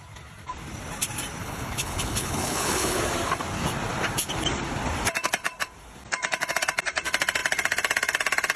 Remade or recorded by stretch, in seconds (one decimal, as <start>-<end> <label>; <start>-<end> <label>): 0.0-1.4 recorded; 1.4-3.0 remade; 3.0-8.6 recorded